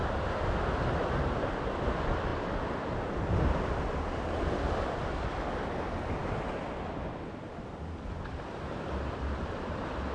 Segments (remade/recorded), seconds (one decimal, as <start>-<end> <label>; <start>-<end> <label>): 0.0-10.1 recorded